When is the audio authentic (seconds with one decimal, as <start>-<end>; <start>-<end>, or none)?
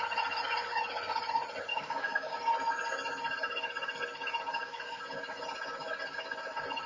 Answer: 0.0-1.7; 2.3-4.5; 5.0-6.9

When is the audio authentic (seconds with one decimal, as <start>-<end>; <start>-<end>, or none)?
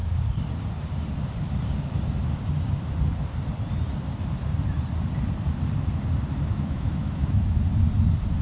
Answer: 0.0-6.5; 7.5-8.4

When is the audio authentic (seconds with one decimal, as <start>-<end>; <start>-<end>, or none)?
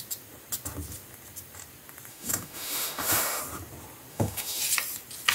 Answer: 0.0-2.1; 3.4-4.1; 4.6-5.3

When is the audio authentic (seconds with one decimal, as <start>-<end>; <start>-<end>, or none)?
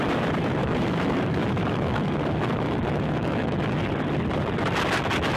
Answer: 0.0-0.6; 3.8-5.4